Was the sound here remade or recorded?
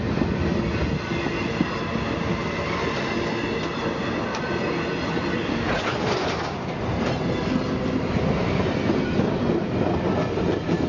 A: recorded